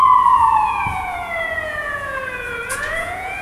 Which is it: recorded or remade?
remade